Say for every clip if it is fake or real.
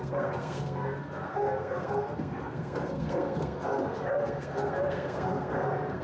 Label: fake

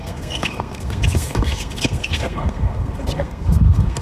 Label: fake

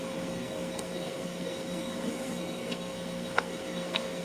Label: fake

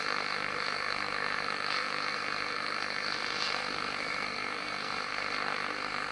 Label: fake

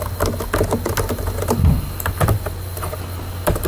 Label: real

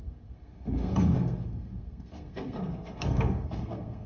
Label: fake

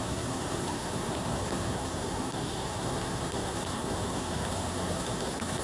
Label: fake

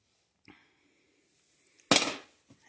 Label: real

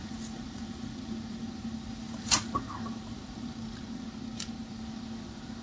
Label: real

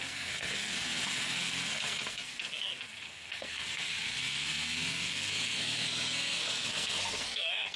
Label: fake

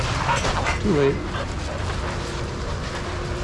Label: real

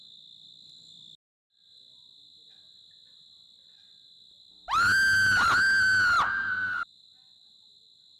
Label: real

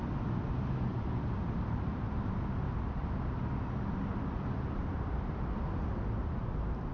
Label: real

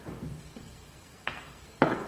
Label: fake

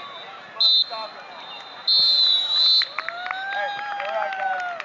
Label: real